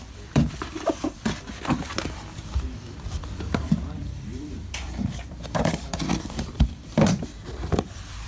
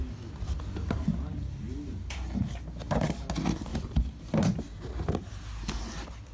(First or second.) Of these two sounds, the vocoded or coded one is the first